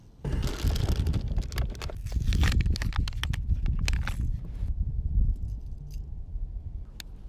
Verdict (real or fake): real